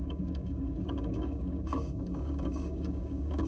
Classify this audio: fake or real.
fake